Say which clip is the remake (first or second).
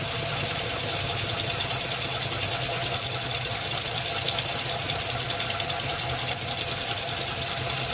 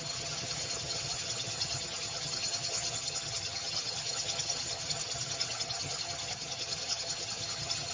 second